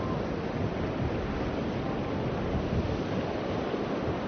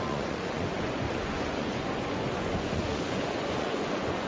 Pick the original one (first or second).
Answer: first